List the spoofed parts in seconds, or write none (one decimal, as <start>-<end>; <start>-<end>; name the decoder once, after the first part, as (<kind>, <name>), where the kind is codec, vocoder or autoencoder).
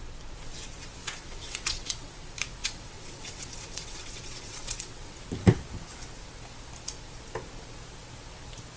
1.0-2.2 (vocoder, WaveNeXt); 2.6-5.2